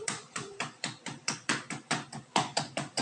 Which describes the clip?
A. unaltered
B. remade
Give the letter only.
B